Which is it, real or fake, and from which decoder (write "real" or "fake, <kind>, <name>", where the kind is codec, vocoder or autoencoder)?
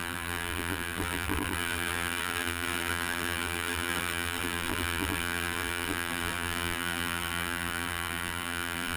fake, vocoder, BigVGAN v2